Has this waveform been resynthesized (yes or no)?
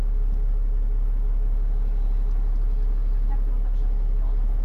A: no